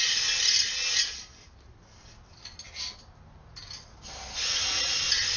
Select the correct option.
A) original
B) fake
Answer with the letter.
A